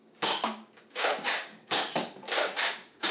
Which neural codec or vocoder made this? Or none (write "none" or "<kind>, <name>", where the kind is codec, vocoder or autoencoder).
codec, DAC